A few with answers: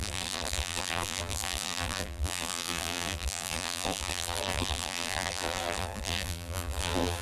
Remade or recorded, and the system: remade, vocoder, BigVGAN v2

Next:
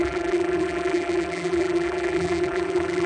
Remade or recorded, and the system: remade, vocoder, BigVGAN v2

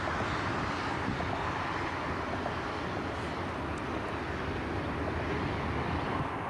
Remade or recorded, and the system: recorded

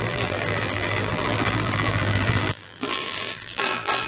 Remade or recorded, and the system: remade, vocoder, BigVGAN v2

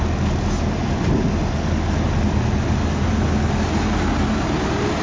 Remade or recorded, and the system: recorded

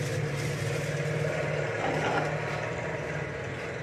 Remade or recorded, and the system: remade, vocoder, BigVGAN v2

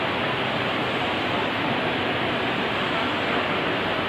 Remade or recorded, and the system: remade, vocoder, BigVGAN v2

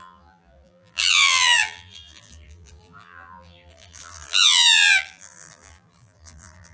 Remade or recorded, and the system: remade, vocoder, BigVGAN v2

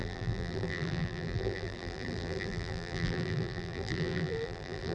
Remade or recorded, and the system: remade, vocoder, BigVGAN v2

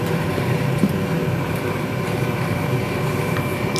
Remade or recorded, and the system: remade, vocoder, BigVGAN v2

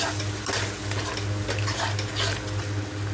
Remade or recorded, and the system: recorded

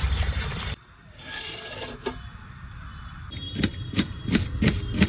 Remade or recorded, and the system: remade, vocoder, BigVGAN v2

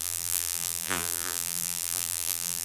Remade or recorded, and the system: remade, vocoder, BigVGAN v2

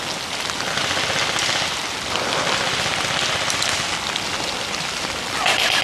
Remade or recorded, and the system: recorded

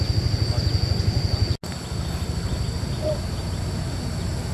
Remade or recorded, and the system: recorded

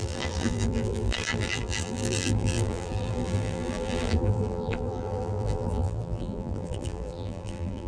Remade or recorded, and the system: remade, vocoder, BigVGAN v2